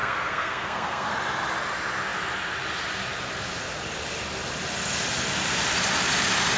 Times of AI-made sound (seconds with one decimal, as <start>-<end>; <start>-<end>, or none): 0.0-1.1